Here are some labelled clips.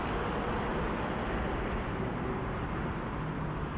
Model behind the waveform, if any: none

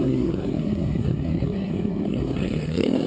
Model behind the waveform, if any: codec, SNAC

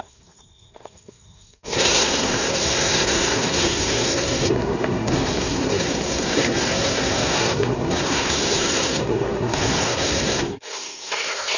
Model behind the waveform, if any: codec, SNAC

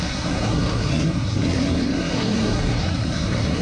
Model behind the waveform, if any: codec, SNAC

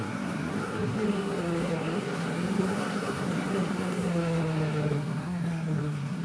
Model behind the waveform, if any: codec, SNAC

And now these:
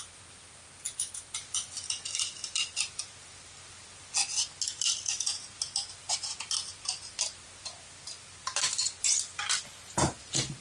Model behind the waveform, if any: none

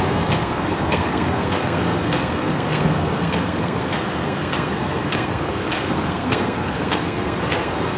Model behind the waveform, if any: codec, SNAC